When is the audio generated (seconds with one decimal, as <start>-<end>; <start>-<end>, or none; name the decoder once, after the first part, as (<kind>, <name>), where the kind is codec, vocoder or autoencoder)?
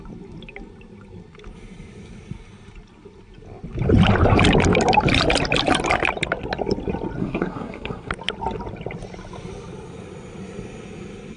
7.2-8.1 (codec, SNAC)